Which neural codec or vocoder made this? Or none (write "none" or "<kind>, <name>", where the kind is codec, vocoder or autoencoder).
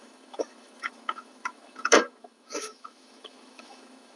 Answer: autoencoder, DAC-VAE